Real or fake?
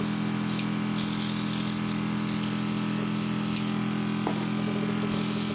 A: real